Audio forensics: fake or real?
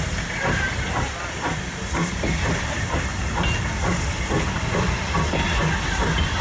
real